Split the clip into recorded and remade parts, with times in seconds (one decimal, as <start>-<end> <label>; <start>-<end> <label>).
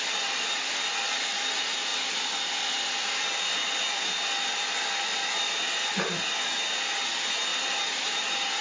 0.0-7.5 recorded; 7.5-8.6 remade